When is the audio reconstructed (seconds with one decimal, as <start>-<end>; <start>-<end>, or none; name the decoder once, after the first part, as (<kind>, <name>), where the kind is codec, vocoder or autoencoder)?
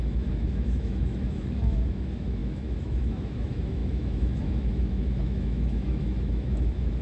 0.0-7.0 (autoencoder, DAC-VAE)